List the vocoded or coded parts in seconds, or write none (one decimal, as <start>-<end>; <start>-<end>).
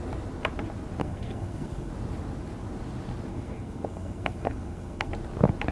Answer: 1.0-1.9; 3.3-5.1